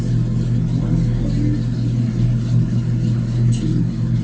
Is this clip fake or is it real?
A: real